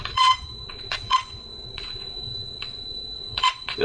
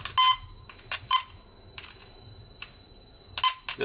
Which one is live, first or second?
second